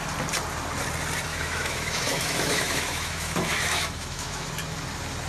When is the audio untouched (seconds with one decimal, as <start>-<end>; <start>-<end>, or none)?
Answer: 0.0-1.3; 4.5-5.3